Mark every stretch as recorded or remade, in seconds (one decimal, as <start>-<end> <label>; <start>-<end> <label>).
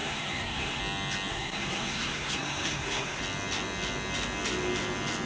0.0-0.8 remade; 0.8-1.3 recorded; 1.3-3.2 remade; 3.2-5.3 recorded